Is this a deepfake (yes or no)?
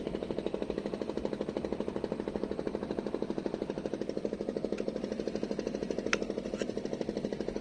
no